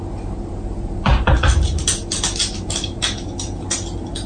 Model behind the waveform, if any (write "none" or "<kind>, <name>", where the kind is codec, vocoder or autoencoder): none